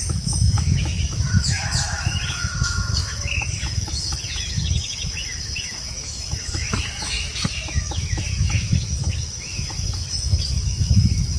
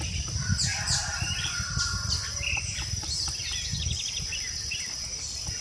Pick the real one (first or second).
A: second